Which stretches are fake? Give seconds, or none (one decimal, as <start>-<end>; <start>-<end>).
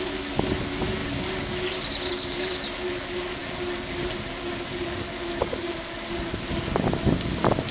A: none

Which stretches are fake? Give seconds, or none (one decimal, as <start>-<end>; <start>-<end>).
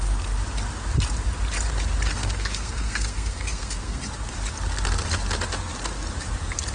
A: 2.2-4.0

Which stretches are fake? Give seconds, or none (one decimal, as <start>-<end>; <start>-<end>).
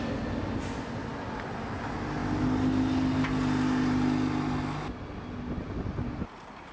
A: none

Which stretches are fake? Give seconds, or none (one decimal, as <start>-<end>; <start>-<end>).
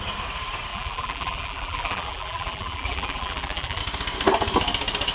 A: 0.7-3.8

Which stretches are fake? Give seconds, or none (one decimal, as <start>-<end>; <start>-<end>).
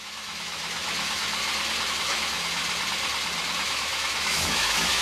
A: 0.0-1.4; 1.9-2.6; 3.5-5.0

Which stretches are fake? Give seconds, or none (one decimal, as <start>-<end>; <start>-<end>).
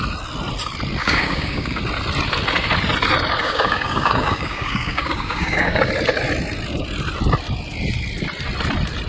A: 1.0-1.8; 3.4-5.9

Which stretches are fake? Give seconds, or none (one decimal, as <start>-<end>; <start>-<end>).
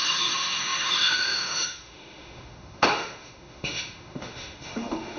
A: 0.0-5.2